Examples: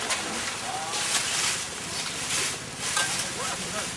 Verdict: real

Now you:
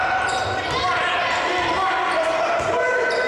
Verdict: real